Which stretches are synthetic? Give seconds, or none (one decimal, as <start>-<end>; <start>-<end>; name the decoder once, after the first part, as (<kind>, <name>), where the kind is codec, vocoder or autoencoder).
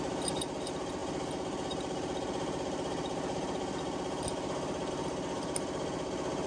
none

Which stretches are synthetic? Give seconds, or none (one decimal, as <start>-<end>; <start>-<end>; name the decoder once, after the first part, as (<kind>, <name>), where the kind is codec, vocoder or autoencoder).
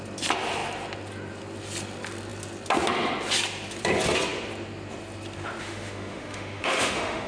5.6-7.3 (autoencoder, DAC-VAE)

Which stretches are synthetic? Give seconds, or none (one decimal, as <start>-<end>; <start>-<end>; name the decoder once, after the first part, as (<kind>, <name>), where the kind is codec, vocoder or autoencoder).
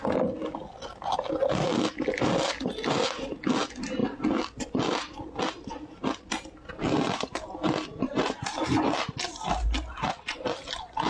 none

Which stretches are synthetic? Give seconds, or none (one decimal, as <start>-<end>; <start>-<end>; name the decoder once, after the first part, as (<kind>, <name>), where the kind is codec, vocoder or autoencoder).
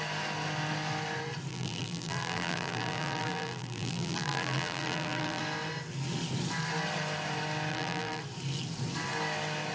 1.5-5.4 (vocoder, BigVGAN v2); 7.7-8.2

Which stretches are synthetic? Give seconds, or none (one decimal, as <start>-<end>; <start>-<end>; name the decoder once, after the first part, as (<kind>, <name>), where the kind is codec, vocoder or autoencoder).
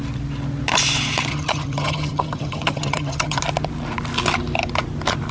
1.3-3.4 (vocoder, HiFi-GAN)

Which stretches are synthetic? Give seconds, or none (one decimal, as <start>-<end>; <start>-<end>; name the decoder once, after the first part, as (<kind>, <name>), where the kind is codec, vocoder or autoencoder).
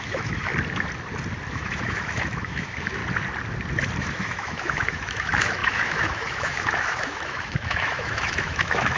0.0-0.5 (autoencoder, DAC-VAE); 1.5-3.0; 4.0-9.0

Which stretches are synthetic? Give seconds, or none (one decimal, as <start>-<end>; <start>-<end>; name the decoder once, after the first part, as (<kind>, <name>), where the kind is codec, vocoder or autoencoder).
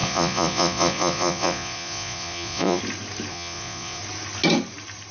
0.0-2.8 (vocoder, Vocos); 3.3-4.0